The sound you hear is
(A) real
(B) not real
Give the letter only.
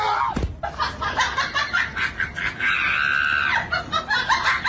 A